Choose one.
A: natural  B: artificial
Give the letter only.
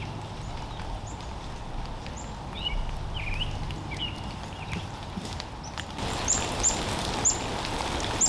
A